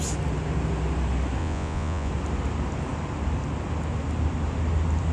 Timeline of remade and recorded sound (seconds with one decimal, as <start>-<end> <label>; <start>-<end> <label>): 0.0-1.4 recorded; 1.4-2.1 remade; 2.1-5.1 recorded